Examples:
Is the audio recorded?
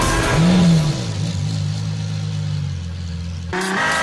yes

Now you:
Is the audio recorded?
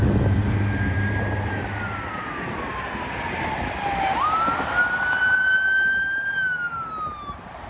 yes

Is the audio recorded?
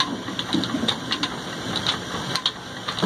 yes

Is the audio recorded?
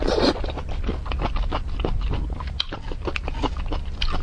yes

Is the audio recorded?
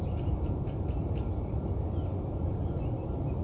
yes